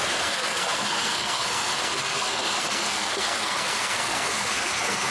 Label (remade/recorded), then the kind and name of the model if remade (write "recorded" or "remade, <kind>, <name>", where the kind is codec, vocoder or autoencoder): remade, codec, SNAC